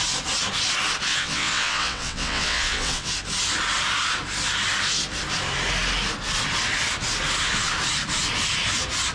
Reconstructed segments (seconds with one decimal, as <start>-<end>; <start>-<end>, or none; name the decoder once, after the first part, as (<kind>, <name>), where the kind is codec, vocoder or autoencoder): 1.1-3.1 (vocoder, WaveNeXt)